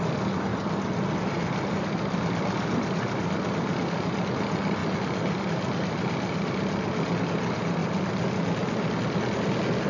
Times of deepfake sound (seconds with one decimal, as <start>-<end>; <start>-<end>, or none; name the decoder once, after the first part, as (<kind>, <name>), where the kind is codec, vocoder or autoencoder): 0.5-4.3 (vocoder, BigVGAN v2)